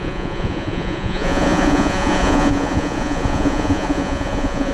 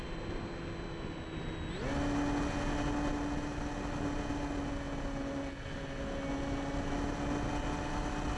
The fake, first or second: first